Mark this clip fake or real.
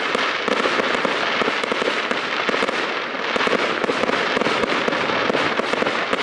real